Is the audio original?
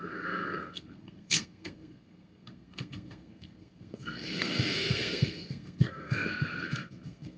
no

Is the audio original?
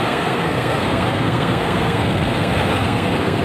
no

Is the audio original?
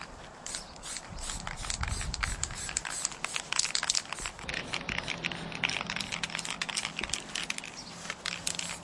yes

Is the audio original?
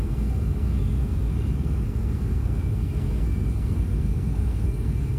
no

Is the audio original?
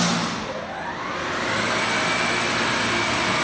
yes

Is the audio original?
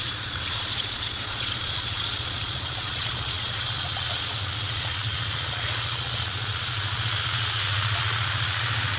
no